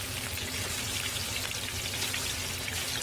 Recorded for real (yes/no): yes